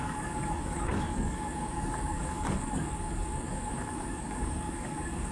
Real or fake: fake